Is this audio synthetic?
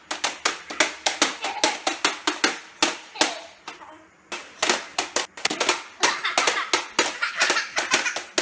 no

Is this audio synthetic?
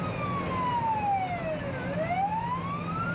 no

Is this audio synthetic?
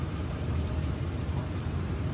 yes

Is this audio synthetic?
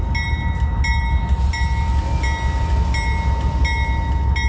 no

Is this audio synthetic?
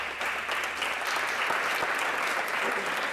no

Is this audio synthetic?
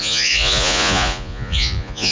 yes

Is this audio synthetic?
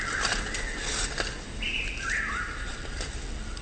no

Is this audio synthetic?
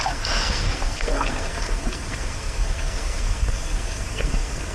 yes